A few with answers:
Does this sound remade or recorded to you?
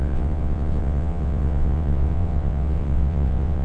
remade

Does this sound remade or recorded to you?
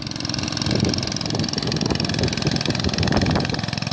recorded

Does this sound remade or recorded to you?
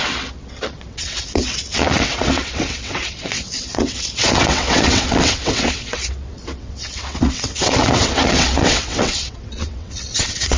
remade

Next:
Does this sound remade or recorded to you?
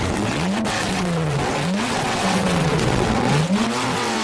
remade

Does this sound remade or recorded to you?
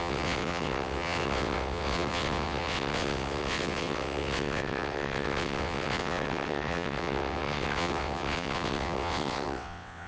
remade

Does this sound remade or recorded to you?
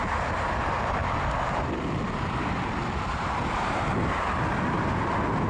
recorded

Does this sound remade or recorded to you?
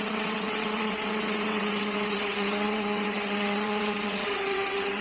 remade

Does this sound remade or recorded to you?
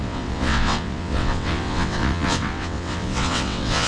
remade